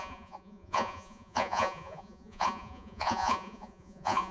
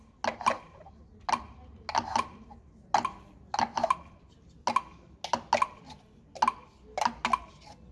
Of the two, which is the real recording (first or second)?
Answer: second